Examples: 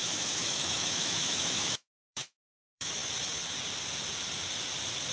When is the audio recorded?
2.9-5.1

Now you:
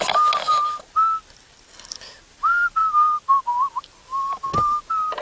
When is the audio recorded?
0.0-5.2

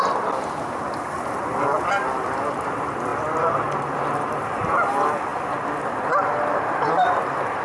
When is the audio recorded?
0.0-7.6